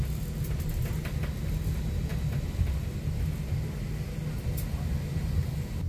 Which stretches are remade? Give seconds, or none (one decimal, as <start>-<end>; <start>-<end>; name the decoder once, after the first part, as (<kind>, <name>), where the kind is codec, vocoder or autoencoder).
none